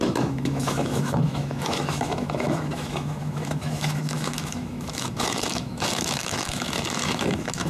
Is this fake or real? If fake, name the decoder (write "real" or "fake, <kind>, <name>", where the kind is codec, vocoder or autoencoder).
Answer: fake, autoencoder, DAC-VAE